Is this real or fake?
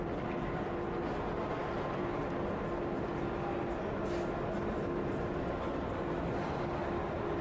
real